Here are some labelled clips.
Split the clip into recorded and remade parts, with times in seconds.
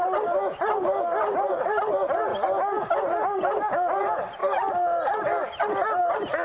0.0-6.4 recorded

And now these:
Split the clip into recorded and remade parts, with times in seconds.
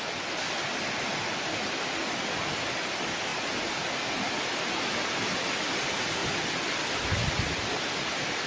0.0-8.5 recorded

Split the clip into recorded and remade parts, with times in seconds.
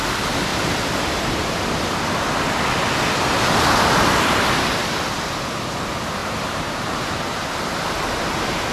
0.0-0.5 recorded; 0.5-1.8 remade; 1.8-6.2 recorded; 6.2-7.5 remade; 7.5-8.7 recorded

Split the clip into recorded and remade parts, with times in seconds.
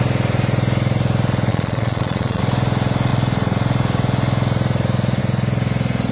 0.0-1.5 recorded; 1.5-2.4 remade; 2.4-6.1 recorded